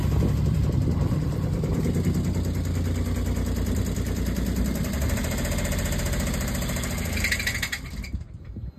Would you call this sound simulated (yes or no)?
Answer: no